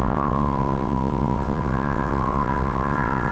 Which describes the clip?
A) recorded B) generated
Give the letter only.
B